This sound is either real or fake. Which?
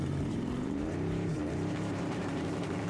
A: fake